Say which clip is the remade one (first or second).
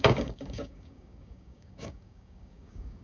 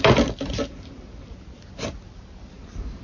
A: first